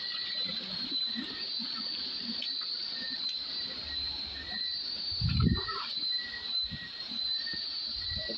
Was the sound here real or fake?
fake